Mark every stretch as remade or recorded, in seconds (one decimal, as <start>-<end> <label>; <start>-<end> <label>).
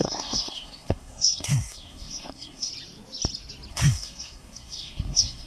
0.0-2.7 remade; 2.7-3.7 recorded; 3.7-5.5 remade